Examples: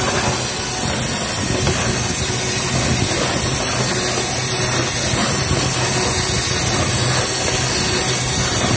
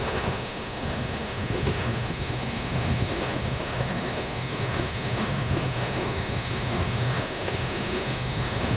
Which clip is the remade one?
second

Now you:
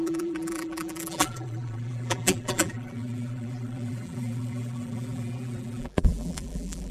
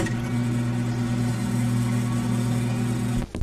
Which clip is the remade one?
first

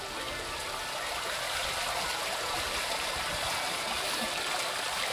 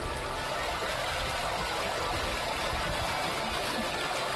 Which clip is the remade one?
first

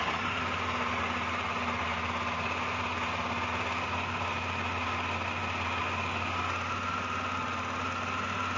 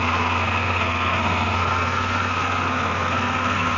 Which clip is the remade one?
second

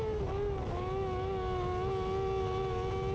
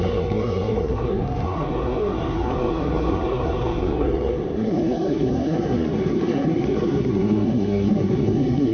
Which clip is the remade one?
second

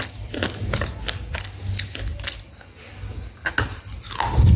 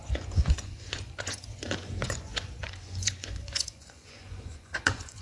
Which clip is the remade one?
second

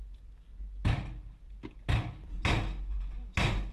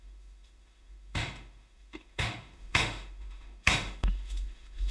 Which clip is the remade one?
second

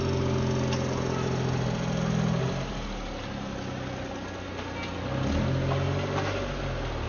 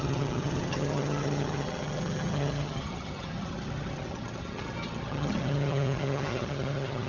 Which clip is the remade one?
second